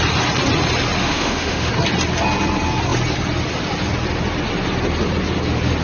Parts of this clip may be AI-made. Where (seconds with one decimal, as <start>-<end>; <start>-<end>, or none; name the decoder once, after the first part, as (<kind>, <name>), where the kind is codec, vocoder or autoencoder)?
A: 1.0-1.7 (autoencoder, DAC-VAE)